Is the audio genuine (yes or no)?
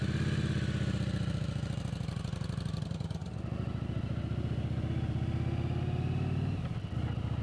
yes